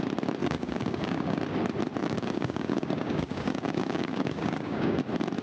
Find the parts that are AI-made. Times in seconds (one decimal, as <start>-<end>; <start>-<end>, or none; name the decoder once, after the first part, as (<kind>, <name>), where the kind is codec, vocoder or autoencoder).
0.4-1.4 (codec, DAC); 2.0-5.0